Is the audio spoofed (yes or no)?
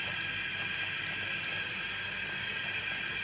no